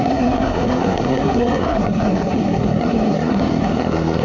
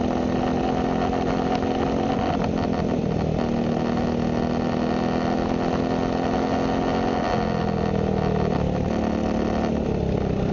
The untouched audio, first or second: second